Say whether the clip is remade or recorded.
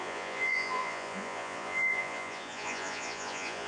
remade